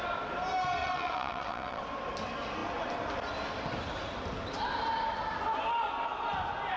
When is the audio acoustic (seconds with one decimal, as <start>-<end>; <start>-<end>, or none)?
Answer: 0.0-0.8; 1.8-6.8